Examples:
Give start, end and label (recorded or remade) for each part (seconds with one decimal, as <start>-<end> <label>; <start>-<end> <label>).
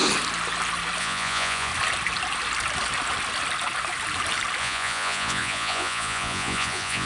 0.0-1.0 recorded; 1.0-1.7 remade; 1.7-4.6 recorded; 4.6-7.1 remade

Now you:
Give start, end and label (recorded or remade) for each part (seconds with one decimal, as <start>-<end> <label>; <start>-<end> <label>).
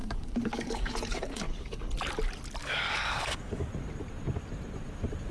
0.0-1.8 remade; 1.8-2.6 recorded; 2.6-3.7 remade; 3.7-5.3 recorded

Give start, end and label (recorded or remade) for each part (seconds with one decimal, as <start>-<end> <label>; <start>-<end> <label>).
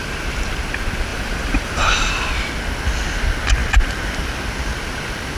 0.0-1.1 recorded; 1.1-2.1 remade; 2.1-5.4 recorded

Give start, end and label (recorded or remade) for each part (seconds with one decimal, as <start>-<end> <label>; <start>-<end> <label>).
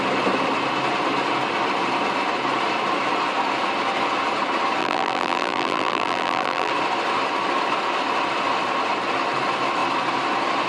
0.0-4.8 recorded; 4.8-6.7 remade; 6.7-10.7 recorded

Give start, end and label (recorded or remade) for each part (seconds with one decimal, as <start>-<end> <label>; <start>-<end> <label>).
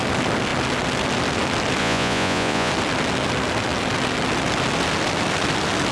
0.0-1.8 recorded; 1.8-2.7 remade; 2.7-5.9 recorded